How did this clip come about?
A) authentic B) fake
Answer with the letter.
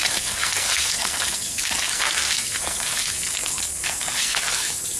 B